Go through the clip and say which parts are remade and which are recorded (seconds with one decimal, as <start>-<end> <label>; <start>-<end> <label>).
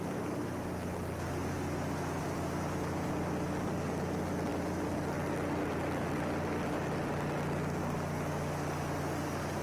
0.0-2.2 recorded; 2.2-3.1 remade; 3.1-9.6 recorded